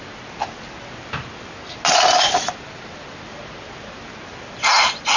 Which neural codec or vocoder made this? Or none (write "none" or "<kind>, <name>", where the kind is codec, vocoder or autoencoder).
none